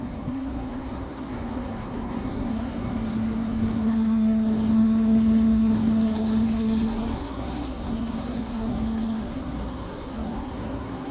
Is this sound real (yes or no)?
no